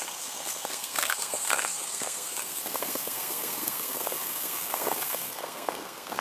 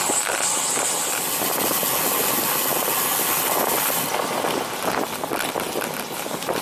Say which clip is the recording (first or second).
second